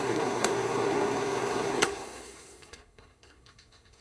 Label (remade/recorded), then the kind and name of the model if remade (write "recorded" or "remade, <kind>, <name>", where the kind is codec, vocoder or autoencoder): remade, codec, SNAC